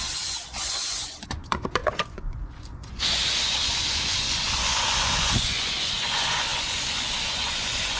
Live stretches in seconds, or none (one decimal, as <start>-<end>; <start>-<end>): none